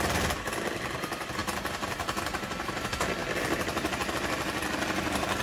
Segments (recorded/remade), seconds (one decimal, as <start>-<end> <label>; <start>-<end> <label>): 0.0-5.4 recorded